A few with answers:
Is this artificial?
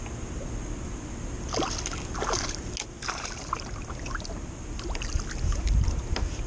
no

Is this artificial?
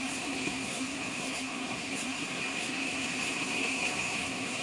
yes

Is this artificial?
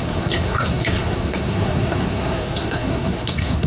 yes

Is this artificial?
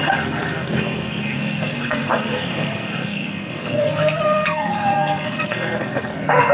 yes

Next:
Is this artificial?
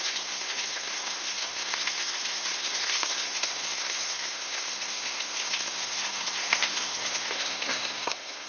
yes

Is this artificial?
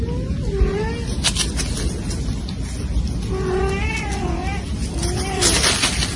no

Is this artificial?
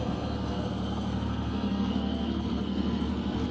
yes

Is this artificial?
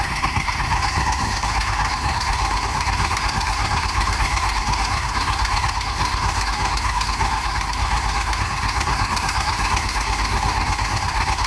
yes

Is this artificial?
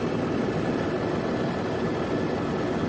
no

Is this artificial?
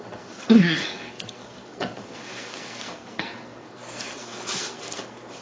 yes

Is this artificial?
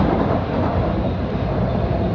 no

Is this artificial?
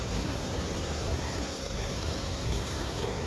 yes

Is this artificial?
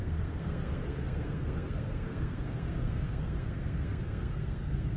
yes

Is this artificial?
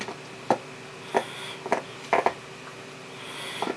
no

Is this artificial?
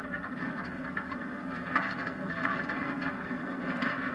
yes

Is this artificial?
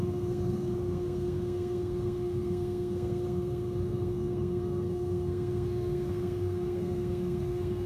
yes